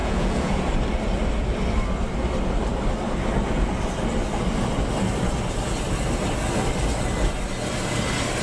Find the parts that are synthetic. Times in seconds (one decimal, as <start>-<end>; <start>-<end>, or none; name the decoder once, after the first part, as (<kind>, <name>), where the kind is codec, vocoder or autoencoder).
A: 0.0-0.7 (vocoder, Vocos)